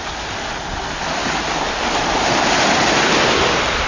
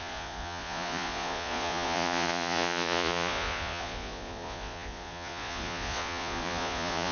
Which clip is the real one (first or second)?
first